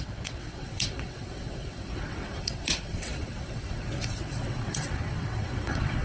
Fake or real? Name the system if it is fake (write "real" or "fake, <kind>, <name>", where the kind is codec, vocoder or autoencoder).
fake, vocoder, WaveNeXt